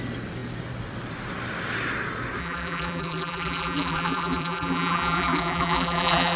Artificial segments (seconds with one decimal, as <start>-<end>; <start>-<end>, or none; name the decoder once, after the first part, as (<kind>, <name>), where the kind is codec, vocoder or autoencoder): 2.4-6.4 (vocoder, BigVGAN v2)